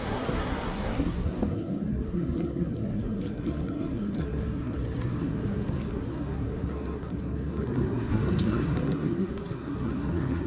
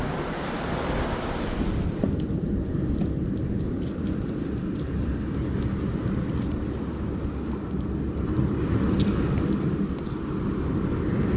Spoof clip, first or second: first